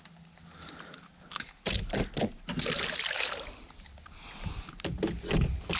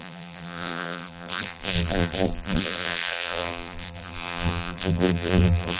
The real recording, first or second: first